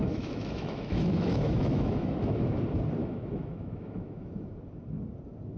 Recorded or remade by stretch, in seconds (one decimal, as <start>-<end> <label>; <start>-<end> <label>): 0.0-2.6 remade; 2.6-3.0 recorded; 3.0-4.5 remade; 4.5-5.6 recorded